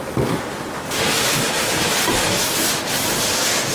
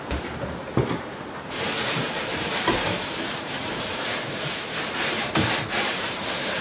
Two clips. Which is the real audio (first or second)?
first